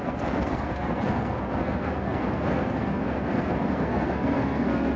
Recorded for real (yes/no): no